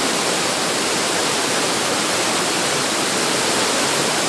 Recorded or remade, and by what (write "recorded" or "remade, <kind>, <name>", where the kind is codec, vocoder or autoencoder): recorded